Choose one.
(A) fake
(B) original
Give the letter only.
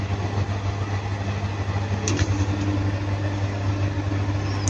B